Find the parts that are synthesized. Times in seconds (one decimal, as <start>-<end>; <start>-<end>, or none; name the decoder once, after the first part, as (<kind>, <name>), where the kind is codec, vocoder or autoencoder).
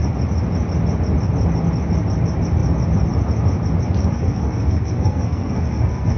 4.0-6.2 (codec, SNAC)